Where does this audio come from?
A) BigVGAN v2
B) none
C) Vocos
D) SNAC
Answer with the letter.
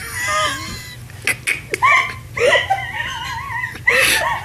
B